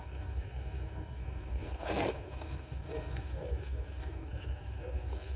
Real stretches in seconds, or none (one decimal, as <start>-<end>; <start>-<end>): none